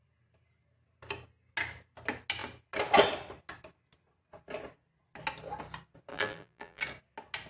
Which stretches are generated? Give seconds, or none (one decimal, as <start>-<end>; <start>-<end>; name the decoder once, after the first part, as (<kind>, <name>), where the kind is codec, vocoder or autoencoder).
6.1-6.8 (vocoder, BigVGAN v2)